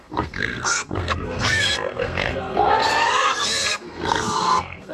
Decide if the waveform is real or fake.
fake